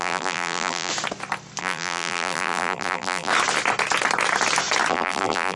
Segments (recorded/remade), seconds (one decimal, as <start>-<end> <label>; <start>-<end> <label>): 0.0-0.9 remade; 0.9-1.6 recorded; 1.6-3.3 remade; 3.3-4.9 recorded; 4.9-5.6 remade